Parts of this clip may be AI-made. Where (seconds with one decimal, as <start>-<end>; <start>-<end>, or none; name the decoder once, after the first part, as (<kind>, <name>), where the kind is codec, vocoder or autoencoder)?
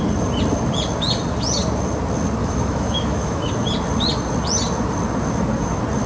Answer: 2.4-3.5 (autoencoder, DAC-VAE)